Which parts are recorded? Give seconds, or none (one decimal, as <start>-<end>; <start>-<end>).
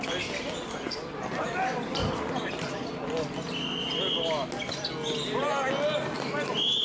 0.0-6.8